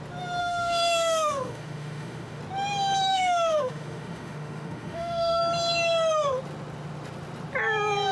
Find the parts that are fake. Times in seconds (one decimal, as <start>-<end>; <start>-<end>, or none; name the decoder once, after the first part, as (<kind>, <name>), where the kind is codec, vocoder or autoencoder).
0.4-2.4 (autoencoder, DAC-VAE); 3.1-5.4